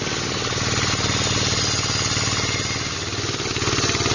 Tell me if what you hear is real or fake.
real